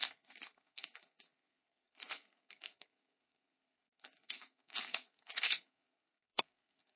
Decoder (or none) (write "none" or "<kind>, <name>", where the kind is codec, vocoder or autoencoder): codec, SNAC